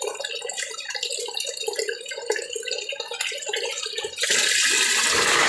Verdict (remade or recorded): recorded